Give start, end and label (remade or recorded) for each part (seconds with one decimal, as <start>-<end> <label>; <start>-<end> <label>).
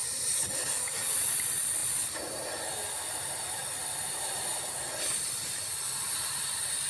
0.0-1.3 remade; 1.3-1.8 recorded; 1.8-2.7 remade; 2.7-6.9 recorded